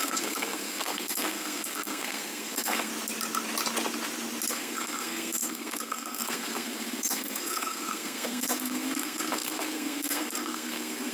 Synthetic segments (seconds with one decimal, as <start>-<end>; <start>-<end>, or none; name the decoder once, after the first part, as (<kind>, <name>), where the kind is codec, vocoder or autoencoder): 0.0-2.9 (codec, SNAC); 4.5-11.1

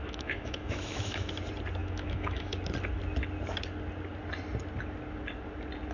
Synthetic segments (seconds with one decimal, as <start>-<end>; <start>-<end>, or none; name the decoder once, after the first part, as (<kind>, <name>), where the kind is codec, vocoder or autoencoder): 0.0-1.3 (autoencoder, DAC-VAE); 1.8-2.5

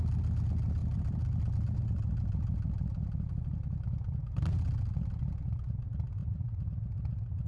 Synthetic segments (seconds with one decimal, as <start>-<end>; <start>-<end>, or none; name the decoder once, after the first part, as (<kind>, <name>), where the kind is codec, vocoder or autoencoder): 0.8-3.4 (vocoder, BigVGAN v2); 4.2-4.7; 6.2-6.7

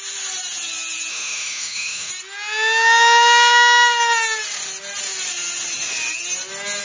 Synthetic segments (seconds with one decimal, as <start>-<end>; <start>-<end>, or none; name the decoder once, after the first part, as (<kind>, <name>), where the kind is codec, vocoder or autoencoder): 1.1-2.1 (autoencoder, DAC-VAE)

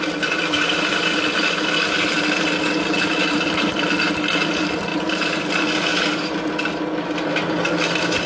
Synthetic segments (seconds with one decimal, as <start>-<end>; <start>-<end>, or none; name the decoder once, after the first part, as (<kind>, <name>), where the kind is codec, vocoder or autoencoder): 4.9-5.5 (vocoder, BigVGAN v2)

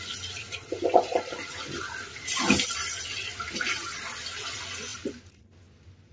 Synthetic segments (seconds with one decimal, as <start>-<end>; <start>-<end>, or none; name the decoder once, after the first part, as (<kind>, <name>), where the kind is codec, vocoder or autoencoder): none

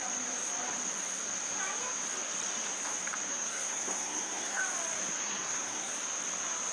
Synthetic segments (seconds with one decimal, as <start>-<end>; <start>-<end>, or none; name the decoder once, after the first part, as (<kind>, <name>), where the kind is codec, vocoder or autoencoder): 3.3-4.6 (codec, SNAC); 5.2-5.9